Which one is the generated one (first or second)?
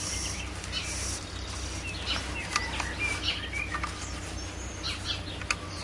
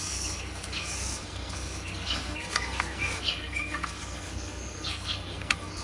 second